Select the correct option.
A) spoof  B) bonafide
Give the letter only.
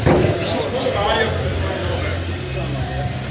B